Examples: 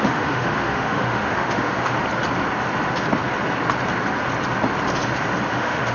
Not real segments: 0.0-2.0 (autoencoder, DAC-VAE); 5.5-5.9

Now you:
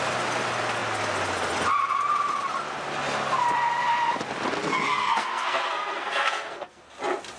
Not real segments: 4.6-6.9 (codec, SNAC)

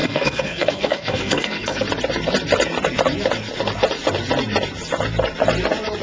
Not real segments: 0.0-1.8 (codec, SNAC)

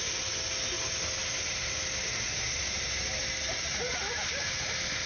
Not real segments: none

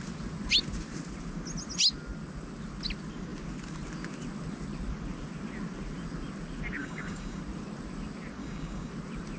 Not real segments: 6.8-7.4 (codec, DAC); 8.4-8.9

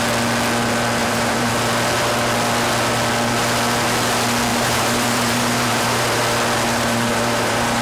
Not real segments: 1.0-1.5 (vocoder, BigVGAN v2); 4.5-6.2; 6.7-7.8

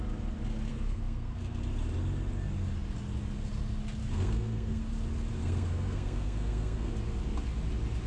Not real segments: 0.7-1.6 (codec, SNAC); 4.0-4.8; 5.4-6.9

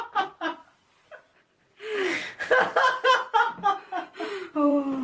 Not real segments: 0.0-1.3 (vocoder, BigVGAN v2); 4.3-5.0